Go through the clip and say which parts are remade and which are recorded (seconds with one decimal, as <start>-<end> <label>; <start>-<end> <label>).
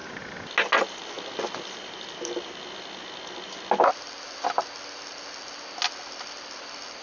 0.0-7.0 recorded